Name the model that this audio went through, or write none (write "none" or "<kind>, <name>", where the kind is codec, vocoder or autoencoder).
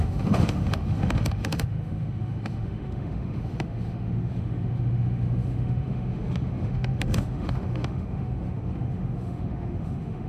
autoencoder, DAC-VAE